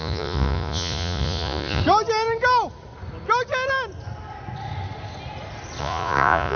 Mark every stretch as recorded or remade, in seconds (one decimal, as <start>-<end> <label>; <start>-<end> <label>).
0.0-1.8 remade; 1.8-5.8 recorded; 5.8-6.6 remade